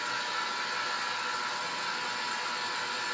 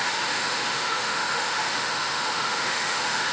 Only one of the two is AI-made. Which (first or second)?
second